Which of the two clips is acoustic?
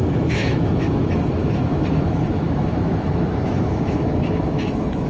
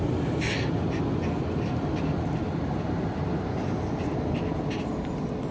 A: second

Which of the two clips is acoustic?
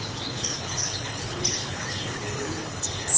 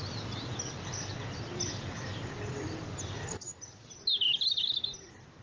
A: second